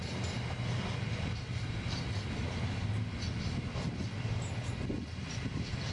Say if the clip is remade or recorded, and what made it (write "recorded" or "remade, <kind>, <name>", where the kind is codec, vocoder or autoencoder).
recorded